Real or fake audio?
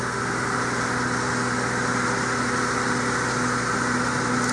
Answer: real